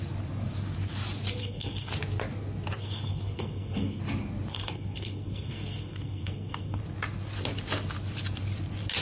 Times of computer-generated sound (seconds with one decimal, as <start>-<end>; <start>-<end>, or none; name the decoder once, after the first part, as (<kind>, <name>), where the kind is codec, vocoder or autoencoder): 1.4-1.9 (codec, SNAC); 2.8-4.0; 4.5-6.8